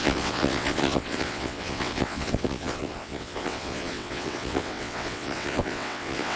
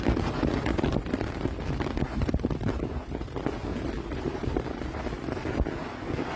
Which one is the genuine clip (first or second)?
second